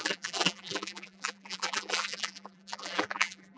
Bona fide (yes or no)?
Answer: no